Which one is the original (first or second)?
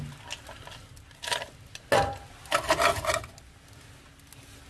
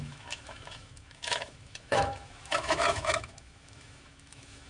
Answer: first